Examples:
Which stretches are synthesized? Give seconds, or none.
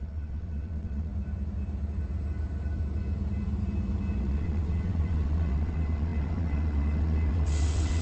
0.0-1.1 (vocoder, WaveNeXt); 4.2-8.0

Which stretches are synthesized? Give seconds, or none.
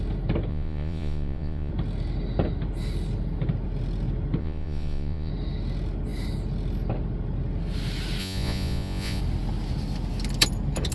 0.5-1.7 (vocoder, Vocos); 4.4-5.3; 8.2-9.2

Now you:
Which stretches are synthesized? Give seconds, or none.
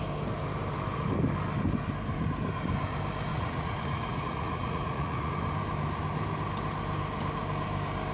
3.3-5.3 (vocoder, Vocos)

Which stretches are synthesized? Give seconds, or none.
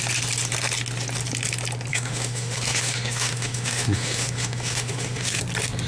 1.9-5.4 (autoencoder, DAC-VAE)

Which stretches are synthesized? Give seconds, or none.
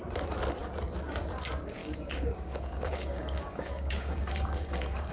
1.8-5.1 (codec, DAC)